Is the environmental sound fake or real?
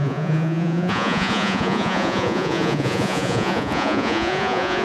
fake